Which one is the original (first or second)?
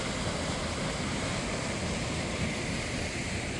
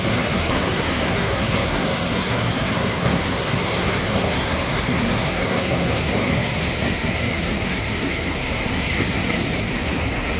first